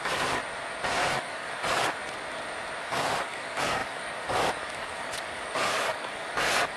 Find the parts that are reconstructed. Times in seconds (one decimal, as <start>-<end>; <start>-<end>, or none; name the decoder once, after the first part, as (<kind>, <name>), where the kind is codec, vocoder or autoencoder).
0.0-0.4 (codec, DAC); 1.1-2.0; 2.8-6.8